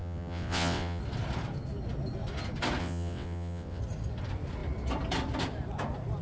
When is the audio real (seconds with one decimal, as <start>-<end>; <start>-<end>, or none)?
1.0-2.8; 3.8-6.2